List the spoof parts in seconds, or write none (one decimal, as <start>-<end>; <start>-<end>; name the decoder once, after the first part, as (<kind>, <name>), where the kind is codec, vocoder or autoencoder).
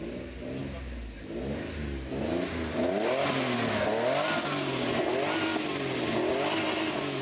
none